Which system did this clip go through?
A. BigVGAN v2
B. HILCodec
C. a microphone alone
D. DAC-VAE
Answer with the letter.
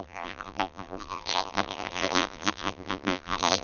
A